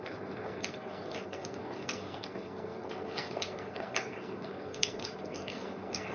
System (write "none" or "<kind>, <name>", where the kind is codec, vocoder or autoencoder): codec, SNAC